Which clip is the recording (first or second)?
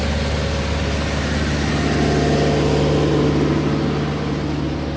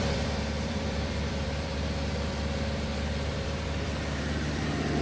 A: first